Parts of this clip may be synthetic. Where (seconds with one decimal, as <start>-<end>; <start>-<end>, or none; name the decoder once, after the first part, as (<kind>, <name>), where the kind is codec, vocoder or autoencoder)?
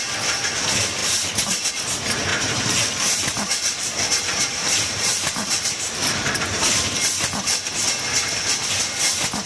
2.3-6.0 (vocoder, BigVGAN v2)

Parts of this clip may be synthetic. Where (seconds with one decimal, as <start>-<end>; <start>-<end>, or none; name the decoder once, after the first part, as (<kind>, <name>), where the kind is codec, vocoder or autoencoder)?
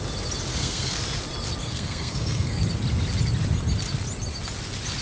0.5-1.0 (codec, SNAC); 1.6-2.6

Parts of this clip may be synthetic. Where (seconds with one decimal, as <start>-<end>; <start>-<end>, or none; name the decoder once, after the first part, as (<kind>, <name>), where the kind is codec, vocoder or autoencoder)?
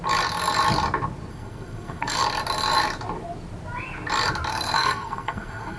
1.3-2.2 (codec, SNAC); 4.5-5.8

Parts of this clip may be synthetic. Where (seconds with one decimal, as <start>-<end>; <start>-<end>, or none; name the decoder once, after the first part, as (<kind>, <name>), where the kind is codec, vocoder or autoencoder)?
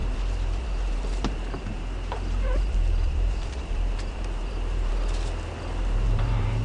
0.0-4.9 (vocoder, BigVGAN v2); 5.8-6.6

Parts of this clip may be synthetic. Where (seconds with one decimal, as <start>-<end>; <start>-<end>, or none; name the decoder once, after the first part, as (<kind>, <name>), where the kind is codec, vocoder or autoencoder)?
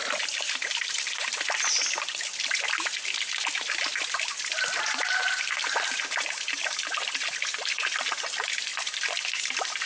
0.0-4.5 (vocoder, BigVGAN v2); 5.2-6.9